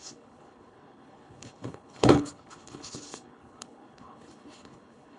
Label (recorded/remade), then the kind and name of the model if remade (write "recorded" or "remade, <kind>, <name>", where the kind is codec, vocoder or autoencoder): remade, codec, HILCodec